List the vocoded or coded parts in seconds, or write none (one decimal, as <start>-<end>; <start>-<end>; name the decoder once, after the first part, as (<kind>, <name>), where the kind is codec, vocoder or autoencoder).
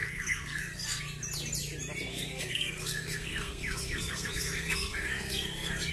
0.0-1.0 (codec, SNAC); 2.1-5.9